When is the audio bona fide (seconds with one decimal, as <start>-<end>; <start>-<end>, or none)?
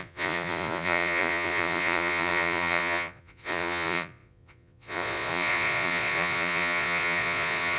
none